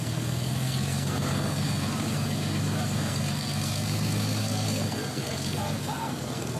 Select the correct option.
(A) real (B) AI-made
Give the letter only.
B